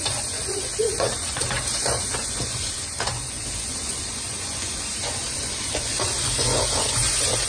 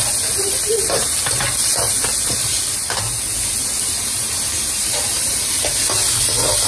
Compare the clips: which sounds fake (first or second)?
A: first